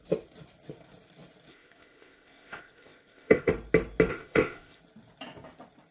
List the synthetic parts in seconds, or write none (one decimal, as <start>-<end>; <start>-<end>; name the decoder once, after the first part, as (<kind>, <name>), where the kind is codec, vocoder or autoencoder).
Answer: 1.5-3.5 (codec, ZipCodec); 4.1-4.8